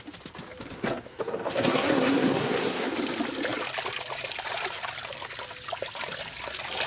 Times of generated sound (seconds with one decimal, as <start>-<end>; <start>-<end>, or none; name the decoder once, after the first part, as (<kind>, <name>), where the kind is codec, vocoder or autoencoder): 0.6-2.9 (codec, SNAC)

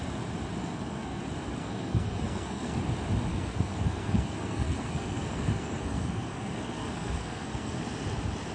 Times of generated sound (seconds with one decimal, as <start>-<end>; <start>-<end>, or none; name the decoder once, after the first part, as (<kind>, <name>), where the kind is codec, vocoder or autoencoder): 0.6-1.2 (codec, SNAC); 1.6-2.8; 3.3-7.8

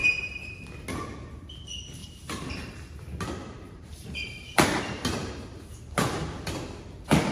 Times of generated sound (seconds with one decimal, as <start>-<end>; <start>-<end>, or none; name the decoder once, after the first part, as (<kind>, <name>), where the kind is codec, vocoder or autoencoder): 0.0-0.5 (vocoder, BigVGAN v2); 2.0-2.7; 3.4-4.8

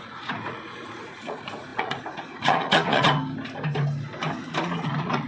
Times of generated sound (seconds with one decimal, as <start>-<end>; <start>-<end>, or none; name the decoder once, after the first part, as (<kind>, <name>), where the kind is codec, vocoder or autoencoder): 0.0-3.1 (vocoder, Vocos); 4.6-5.3

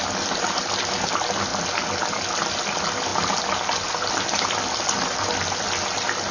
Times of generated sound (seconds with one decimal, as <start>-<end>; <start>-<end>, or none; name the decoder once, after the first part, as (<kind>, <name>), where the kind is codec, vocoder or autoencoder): none

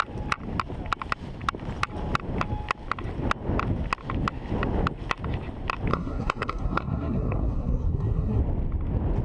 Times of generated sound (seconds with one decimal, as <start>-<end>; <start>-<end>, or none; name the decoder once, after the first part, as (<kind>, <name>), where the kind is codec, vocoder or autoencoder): 5.9-8.4 (codec, SNAC)

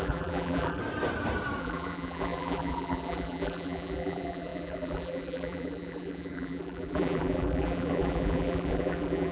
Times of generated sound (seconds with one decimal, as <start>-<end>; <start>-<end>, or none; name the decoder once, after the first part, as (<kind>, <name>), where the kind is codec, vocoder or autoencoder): 0.0-0.8 (vocoder, BigVGAN v2); 1.6-9.3

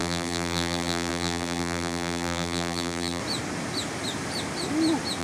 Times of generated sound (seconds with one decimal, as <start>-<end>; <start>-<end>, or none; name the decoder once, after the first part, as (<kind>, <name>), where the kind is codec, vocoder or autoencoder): 0.0-3.2 (vocoder, BigVGAN v2)